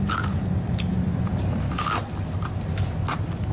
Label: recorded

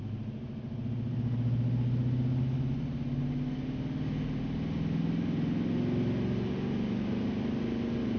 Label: recorded